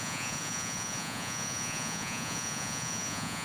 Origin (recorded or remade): remade